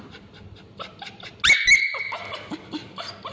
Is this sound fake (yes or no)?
no